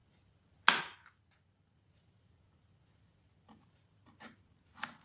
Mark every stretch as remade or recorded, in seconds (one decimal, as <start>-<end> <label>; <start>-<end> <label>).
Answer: 0.0-5.0 recorded